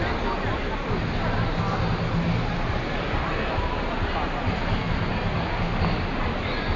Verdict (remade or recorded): recorded